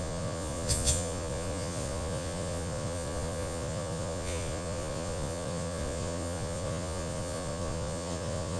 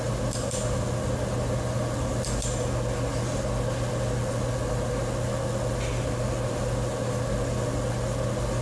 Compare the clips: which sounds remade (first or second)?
first